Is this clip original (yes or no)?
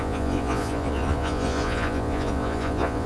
no